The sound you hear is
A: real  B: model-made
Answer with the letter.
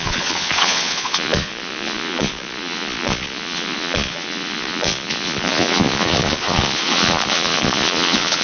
B